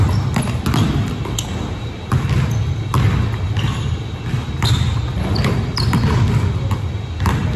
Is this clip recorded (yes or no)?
yes